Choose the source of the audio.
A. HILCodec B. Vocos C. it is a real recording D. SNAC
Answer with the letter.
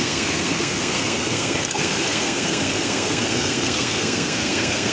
D